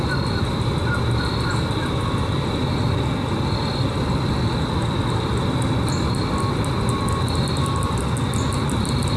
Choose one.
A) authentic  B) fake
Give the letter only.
A